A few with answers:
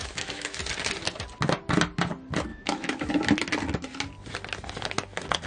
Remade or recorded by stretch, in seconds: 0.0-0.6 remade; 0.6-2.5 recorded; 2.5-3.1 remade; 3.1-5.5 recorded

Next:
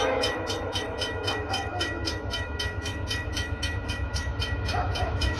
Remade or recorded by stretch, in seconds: 0.0-5.4 remade

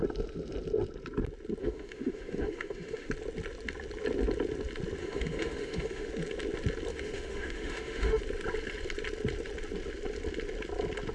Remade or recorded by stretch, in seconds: 0.0-1.6 recorded; 1.6-3.1 remade; 3.1-5.0 recorded; 5.0-6.1 remade; 6.1-6.9 recorded; 6.9-8.2 remade; 8.2-11.1 recorded

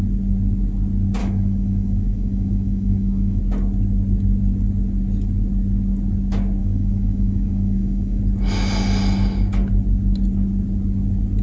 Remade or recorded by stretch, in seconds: 0.0-1.2 recorded; 1.2-3.4 remade; 3.4-6.6 recorded; 6.6-8.2 remade; 8.2-11.4 recorded

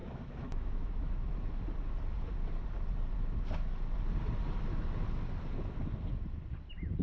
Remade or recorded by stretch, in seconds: 0.0-1.3 remade; 1.3-7.0 recorded

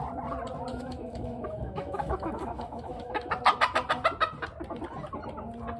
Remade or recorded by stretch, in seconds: 0.0-0.7 recorded; 0.7-3.3 remade; 3.3-5.8 recorded

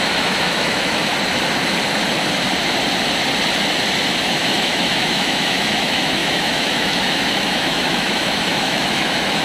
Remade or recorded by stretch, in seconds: 0.0-1.1 remade; 1.1-4.2 recorded; 4.2-9.4 remade